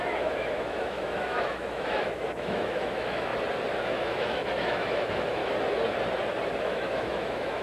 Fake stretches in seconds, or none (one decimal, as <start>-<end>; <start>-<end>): 0.0-3.3; 3.8-5.4; 6.6-7.6